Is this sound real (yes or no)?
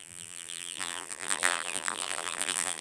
no